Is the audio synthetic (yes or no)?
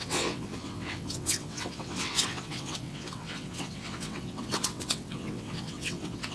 yes